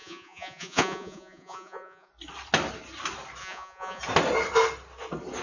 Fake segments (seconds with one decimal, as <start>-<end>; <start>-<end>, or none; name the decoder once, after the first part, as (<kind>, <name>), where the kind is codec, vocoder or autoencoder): 0.0-2.1 (vocoder, Vocos); 3.4-4.0